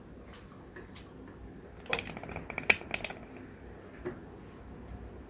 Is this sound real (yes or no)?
yes